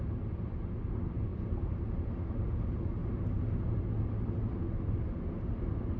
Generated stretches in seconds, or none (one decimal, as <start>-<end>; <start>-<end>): 1.3-1.8; 3.0-3.8